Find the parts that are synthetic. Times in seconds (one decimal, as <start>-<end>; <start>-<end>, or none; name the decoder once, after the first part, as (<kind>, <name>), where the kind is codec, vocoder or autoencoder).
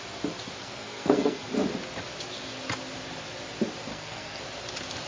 0.6-1.5 (codec, SNAC); 3.9-4.4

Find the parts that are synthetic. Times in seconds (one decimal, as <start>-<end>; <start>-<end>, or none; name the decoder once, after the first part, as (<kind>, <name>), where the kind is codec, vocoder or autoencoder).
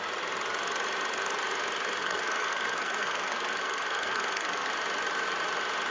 2.0-4.7 (codec, SNAC)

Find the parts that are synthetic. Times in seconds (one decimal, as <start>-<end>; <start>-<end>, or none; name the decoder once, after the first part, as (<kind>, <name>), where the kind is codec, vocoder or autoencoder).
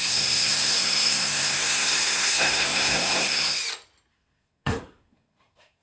0.0-3.6 (codec, SNAC); 4.1-5.8